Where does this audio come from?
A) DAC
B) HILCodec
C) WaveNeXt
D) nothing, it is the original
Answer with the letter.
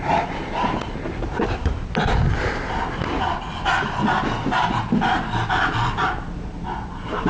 D